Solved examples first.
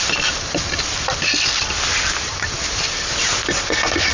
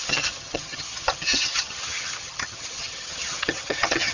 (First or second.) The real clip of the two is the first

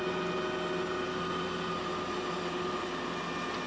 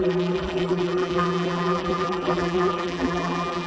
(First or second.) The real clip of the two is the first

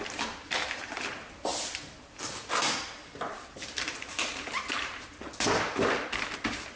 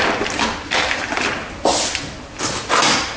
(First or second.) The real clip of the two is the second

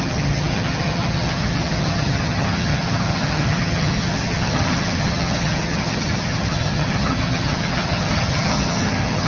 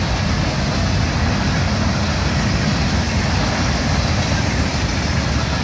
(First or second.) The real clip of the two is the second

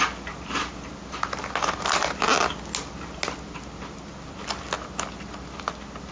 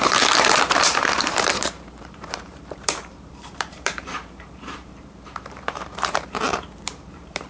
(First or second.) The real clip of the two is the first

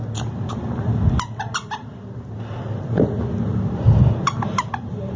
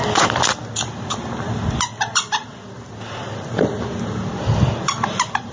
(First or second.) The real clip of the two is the first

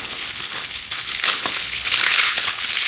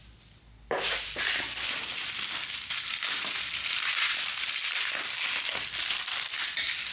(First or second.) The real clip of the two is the second